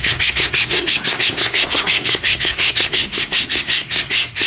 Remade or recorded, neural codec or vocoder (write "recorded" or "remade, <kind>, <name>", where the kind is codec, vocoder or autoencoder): remade, codec, SNAC